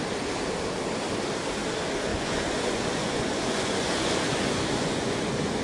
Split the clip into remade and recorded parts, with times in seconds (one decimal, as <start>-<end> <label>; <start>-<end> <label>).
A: 0.0-2.1 recorded; 2.1-5.6 remade